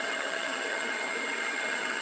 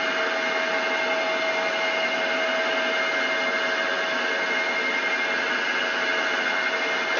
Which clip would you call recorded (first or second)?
second